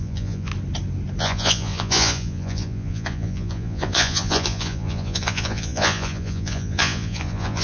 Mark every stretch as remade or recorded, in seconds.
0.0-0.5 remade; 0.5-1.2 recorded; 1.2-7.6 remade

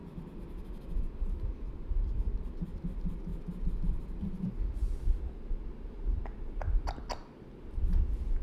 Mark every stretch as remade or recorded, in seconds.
0.0-8.4 recorded

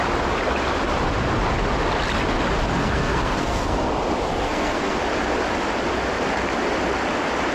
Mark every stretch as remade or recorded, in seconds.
0.0-2.8 recorded; 2.8-3.9 remade; 3.9-4.3 recorded; 4.3-5.0 remade; 5.0-7.5 recorded